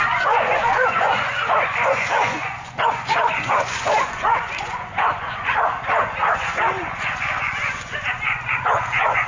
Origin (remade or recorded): remade